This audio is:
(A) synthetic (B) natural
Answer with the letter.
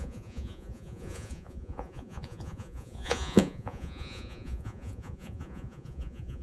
A